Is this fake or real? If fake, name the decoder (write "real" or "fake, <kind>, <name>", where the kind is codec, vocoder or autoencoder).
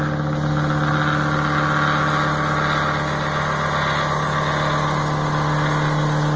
real